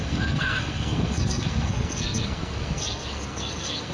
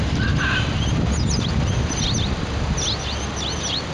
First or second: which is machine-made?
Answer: first